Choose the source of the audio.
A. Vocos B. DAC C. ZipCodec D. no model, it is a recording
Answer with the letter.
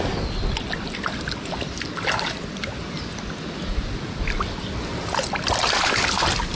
D